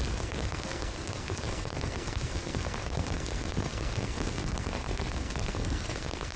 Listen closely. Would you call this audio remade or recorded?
remade